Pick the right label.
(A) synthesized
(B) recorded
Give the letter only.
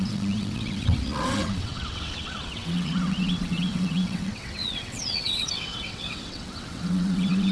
A